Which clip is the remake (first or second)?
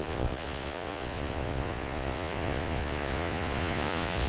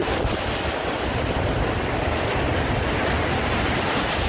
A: first